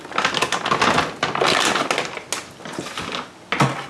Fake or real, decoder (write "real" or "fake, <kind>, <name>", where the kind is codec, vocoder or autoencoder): real